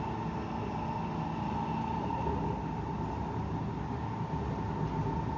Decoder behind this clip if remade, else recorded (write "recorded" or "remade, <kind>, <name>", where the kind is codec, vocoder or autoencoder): recorded